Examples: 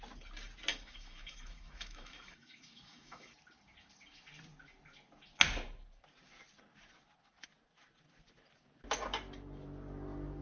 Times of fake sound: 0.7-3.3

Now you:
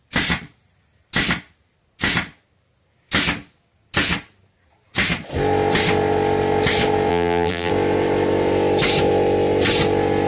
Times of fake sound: 7.1-7.7

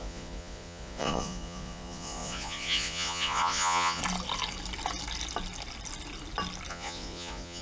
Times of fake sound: 0.0-4.0; 6.7-7.6

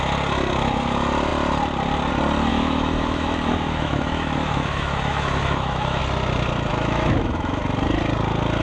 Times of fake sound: 2.5-6.0; 6.7-7.6

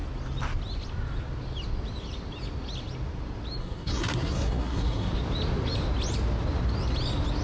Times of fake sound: 3.6-5.1

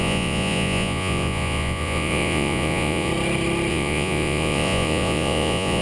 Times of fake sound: 0.0-3.1; 3.7-5.8